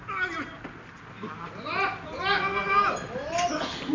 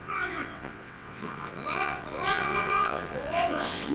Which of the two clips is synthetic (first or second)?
second